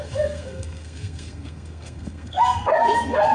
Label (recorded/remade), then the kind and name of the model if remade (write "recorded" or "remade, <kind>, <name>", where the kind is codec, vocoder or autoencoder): remade, codec, SNAC